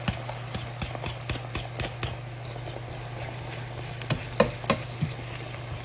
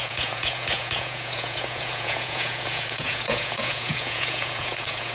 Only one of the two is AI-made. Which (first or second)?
second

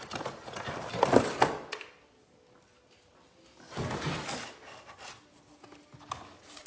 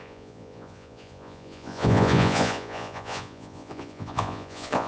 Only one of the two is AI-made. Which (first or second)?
second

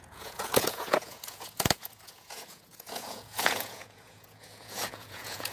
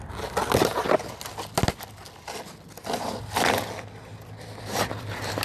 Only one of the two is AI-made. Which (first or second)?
first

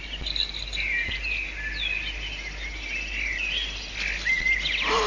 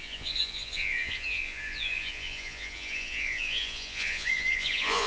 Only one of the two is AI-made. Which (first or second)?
second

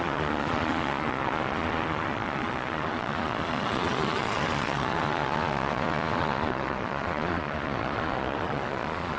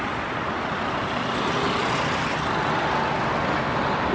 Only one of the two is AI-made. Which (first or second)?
first